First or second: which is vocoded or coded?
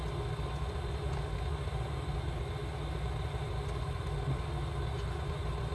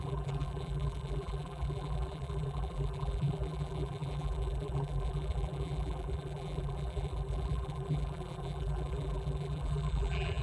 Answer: second